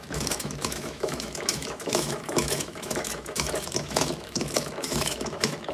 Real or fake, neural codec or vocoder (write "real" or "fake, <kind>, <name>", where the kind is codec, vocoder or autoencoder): fake, autoencoder, DAC-VAE